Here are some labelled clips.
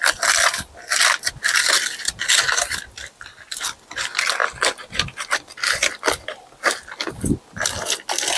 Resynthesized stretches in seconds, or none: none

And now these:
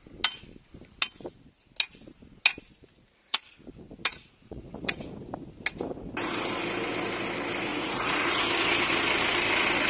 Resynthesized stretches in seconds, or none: 2.7-3.4 (vocoder, Vocos); 4.1-4.9; 7.7-8.4

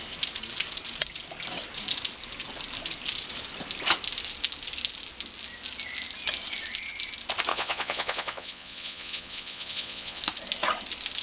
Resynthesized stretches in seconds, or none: 7.5-10.2 (vocoder, Vocos)